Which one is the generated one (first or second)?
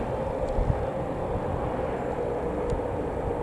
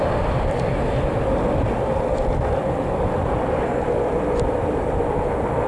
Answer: second